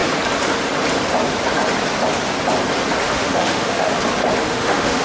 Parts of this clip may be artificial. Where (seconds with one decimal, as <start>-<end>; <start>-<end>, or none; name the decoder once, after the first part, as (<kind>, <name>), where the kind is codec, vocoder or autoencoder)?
3.0-3.9 (autoencoder, DAC-VAE); 4.4-5.0